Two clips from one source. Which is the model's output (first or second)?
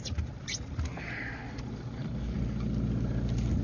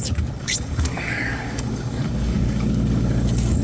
second